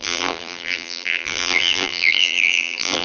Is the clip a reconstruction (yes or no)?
yes